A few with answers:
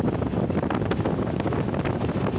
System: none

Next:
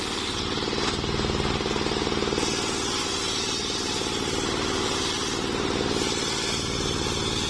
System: none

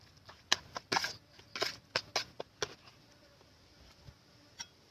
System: none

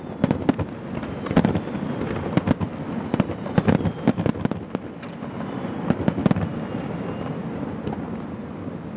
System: none